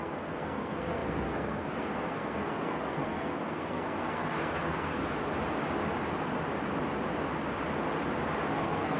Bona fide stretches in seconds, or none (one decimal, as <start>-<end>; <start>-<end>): 5.0-8.5